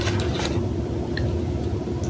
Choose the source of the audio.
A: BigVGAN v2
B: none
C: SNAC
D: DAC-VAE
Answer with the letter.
B